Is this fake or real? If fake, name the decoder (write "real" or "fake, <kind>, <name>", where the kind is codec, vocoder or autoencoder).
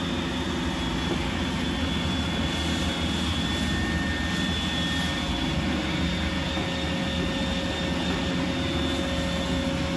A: real